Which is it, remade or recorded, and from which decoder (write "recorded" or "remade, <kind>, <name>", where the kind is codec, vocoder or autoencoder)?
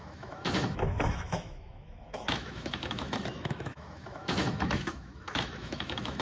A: remade, autoencoder, DAC-VAE